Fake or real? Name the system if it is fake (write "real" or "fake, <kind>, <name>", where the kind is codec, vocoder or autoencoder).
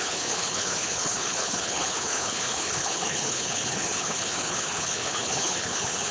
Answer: fake, codec, HILCodec